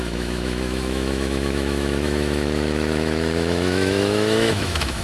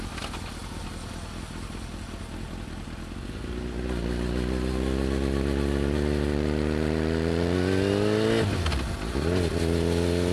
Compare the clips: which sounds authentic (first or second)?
second